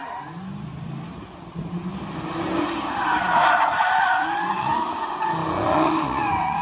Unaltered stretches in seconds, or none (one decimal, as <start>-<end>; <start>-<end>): 0.0-4.0